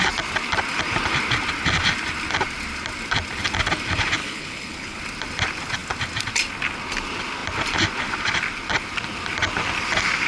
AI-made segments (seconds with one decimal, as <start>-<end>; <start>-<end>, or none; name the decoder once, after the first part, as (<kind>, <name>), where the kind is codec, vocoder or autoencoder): 4.2-5.0 (codec, HILCodec)